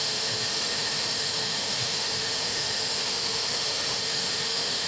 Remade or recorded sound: remade